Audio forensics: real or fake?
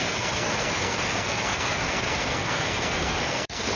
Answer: fake